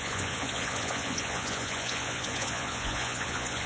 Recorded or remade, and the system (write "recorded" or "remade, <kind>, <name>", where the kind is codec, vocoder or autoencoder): remade, vocoder, Vocos